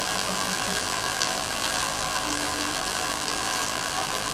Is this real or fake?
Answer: fake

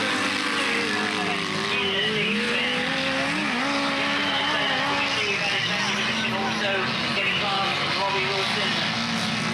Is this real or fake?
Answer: real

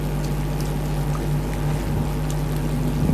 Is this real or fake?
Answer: fake